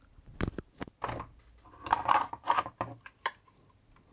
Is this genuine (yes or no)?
yes